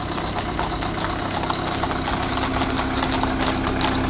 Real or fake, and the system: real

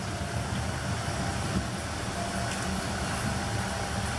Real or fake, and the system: real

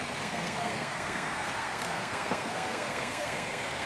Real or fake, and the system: fake, codec, SNAC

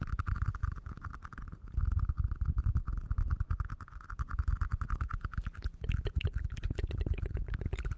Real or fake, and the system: real